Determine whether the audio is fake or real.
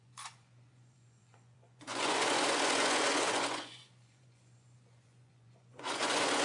fake